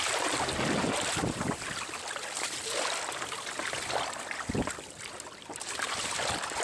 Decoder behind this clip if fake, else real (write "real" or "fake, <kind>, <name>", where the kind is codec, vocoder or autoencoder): real